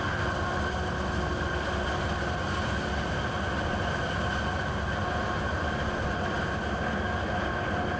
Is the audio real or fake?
real